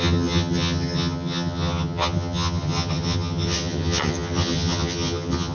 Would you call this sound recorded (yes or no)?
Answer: no